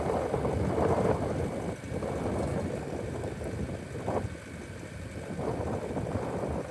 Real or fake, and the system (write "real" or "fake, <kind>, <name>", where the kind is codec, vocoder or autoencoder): fake, vocoder, BigVGAN v2